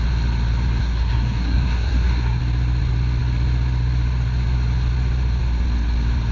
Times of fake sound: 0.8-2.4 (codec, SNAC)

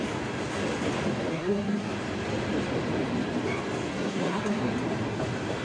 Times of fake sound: 1.3-1.9 (codec, SNAC); 3.9-4.7

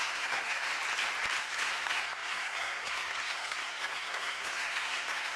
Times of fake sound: 0.0-0.7 (codec, SNAC); 1.4-5.4

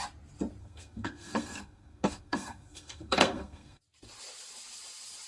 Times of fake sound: 0.6-3.8 (codec, SNAC)

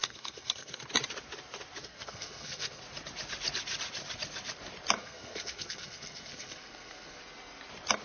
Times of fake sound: 0.0-0.8 (codec, SNAC); 1.8-2.8; 5.0-7.2

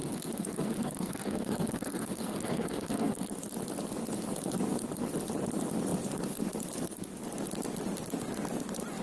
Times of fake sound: 0.0-3.3 (codec, SNAC)